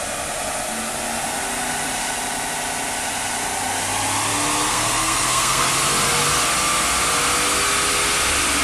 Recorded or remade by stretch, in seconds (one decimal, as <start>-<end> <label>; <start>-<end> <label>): 0.0-4.7 recorded; 4.7-5.7 remade; 5.7-8.6 recorded